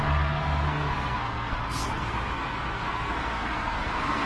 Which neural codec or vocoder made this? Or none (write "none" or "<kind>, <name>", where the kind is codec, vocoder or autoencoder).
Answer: codec, SNAC